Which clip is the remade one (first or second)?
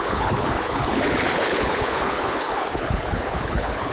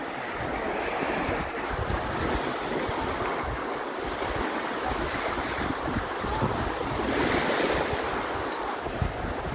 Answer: first